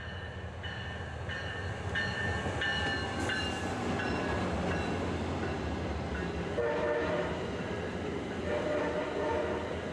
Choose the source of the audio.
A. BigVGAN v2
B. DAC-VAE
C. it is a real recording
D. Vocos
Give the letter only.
C